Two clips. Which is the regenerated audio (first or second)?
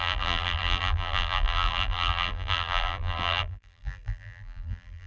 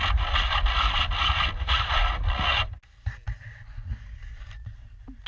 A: first